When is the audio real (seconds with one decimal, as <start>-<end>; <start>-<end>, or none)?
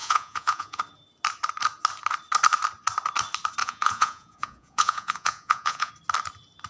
0.8-3.6; 5.9-6.7